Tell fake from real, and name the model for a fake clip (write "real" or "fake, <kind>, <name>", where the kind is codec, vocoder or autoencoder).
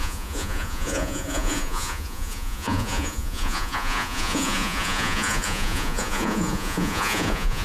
fake, vocoder, Vocos